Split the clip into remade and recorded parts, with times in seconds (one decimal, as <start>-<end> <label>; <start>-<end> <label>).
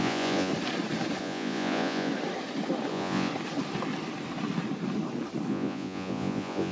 0.0-0.5 remade; 0.5-1.2 recorded; 1.2-2.1 remade; 2.1-2.9 recorded; 2.9-3.3 remade; 3.3-5.5 recorded; 5.5-6.7 remade